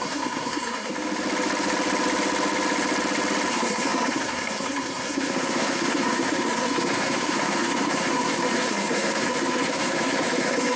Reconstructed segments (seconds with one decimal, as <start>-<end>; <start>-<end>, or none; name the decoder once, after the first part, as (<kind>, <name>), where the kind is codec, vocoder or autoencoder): 0.0-0.9 (codec, SNAC); 3.5-10.8